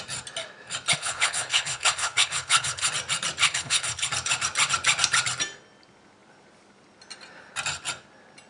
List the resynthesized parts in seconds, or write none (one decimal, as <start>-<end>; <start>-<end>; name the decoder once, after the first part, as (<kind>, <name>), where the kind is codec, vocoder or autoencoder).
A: 0.9-2.9 (codec, HILCodec); 3.4-4.1